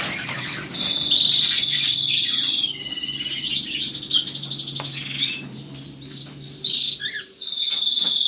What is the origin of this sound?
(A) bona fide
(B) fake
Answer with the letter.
A